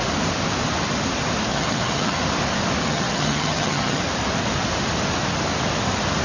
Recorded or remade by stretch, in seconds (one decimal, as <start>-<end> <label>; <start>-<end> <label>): 0.0-1.5 recorded; 1.5-2.2 remade; 2.2-2.8 recorded; 2.8-4.0 remade; 4.0-6.2 recorded